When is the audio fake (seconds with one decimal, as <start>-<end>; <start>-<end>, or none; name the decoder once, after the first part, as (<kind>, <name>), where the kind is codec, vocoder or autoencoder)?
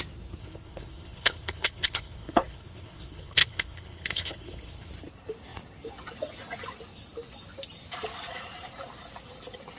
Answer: 0.4-4.9 (codec, HILCodec)